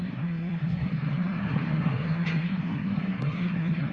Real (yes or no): no